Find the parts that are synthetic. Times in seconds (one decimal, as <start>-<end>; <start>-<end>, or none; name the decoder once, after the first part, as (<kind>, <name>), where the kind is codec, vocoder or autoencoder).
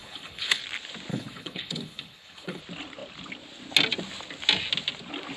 0.0-0.6 (codec, HILCodec); 1.1-2.6